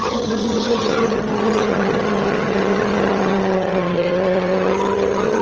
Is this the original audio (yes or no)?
no